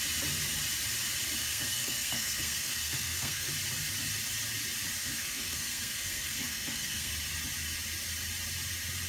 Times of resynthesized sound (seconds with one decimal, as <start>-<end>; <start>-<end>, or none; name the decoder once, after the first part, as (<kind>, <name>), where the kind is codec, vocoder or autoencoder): 1.4-3.5 (codec, SNAC); 5.0-7.1